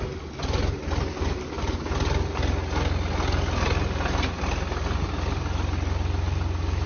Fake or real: real